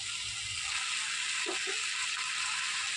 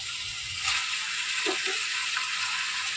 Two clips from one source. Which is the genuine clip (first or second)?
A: first